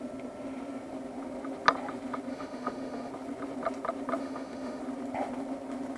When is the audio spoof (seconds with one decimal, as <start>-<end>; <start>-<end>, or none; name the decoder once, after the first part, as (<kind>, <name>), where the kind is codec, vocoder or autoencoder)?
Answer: 2.3-3.1 (autoencoder, DAC-VAE); 4.2-4.8